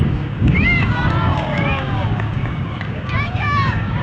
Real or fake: fake